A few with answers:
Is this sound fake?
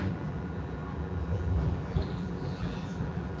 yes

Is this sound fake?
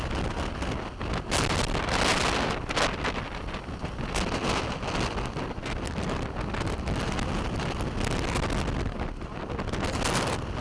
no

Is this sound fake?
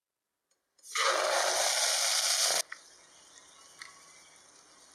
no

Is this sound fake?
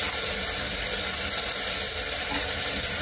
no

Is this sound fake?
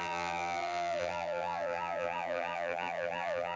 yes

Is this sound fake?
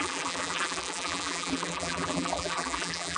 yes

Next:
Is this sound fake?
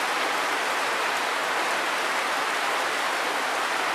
no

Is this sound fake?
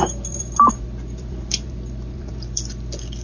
yes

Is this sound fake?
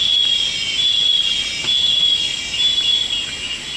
no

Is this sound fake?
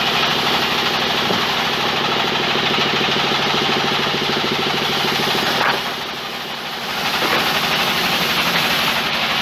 no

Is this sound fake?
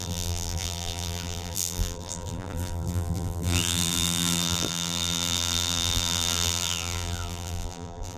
yes